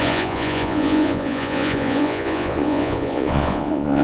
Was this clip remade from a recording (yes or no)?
yes